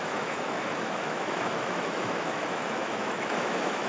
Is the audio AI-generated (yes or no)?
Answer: yes